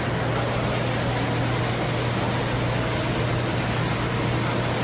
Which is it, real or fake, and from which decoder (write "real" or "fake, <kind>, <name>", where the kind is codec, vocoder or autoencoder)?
real